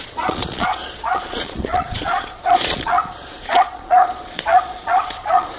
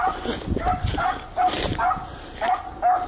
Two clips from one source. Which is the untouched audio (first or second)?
second